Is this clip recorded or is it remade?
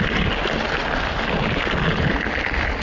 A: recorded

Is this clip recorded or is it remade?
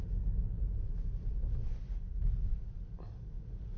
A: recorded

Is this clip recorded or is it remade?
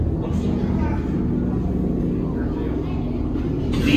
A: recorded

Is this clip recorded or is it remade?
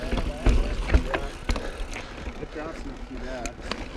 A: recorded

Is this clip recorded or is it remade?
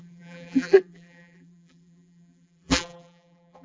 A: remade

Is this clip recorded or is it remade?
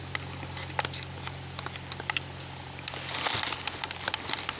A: recorded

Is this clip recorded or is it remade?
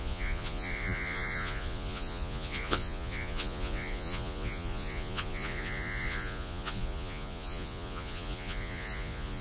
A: remade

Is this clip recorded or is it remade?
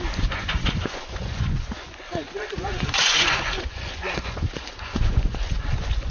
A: remade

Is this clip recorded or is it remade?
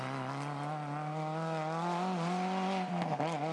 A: recorded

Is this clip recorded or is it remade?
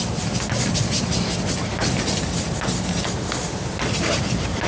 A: recorded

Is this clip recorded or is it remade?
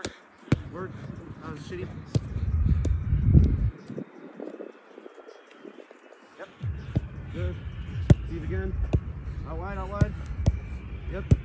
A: recorded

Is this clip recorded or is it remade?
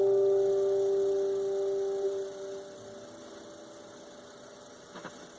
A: recorded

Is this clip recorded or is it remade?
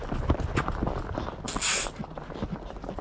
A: recorded